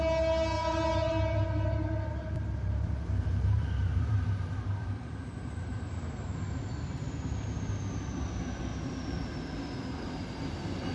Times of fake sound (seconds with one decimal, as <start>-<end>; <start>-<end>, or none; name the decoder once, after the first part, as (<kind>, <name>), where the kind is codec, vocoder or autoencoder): 0.6-5.7 (vocoder, BigVGAN v2); 8.7-10.1